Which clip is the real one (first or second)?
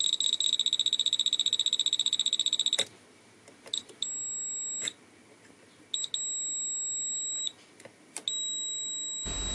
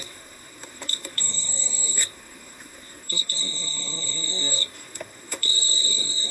first